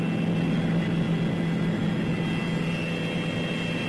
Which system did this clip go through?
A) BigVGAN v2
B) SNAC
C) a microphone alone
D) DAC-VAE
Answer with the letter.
C